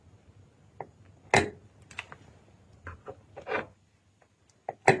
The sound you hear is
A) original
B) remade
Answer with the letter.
A